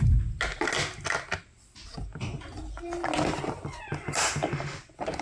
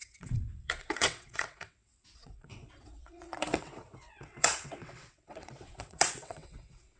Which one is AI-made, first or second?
second